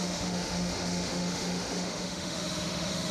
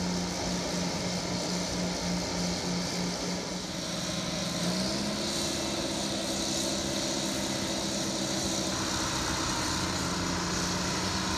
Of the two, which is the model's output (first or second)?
first